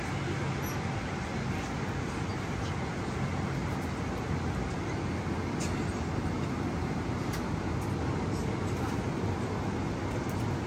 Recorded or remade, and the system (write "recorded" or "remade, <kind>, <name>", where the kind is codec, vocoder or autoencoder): recorded